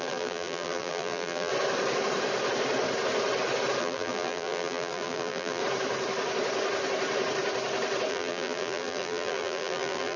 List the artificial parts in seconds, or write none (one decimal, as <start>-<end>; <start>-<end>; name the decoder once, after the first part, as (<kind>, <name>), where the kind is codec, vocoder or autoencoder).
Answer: 0.0-1.5 (vocoder, BigVGAN v2); 3.8-5.6; 8.1-10.2